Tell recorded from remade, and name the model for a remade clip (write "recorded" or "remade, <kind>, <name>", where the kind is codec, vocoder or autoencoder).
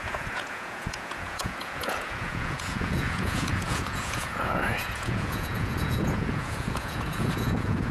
remade, vocoder, Vocos